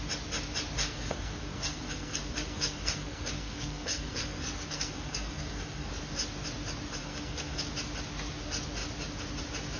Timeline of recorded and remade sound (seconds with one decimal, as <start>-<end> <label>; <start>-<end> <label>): 0.0-0.8 recorded; 0.8-5.9 remade; 5.9-7.0 recorded; 7.0-7.6 remade; 7.6-9.8 recorded